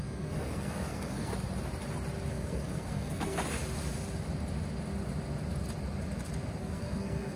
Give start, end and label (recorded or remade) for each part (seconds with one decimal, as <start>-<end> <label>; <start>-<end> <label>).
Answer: 0.0-1.3 remade; 1.3-2.3 recorded; 2.3-3.4 remade; 3.4-6.6 recorded; 6.6-7.4 remade